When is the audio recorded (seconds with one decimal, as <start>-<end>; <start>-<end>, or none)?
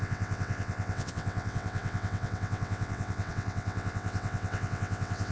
none